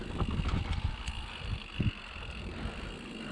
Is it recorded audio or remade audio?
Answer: recorded